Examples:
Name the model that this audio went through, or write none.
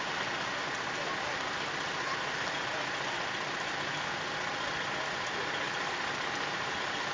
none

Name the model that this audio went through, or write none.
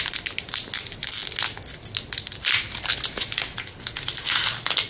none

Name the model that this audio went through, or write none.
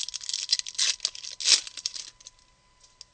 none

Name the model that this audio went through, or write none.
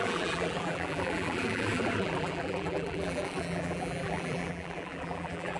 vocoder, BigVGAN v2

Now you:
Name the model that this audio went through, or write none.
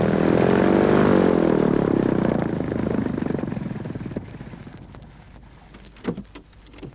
none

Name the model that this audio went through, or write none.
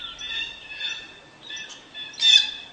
none